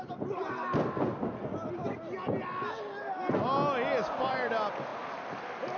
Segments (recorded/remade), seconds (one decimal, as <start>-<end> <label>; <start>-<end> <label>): 0.0-5.8 recorded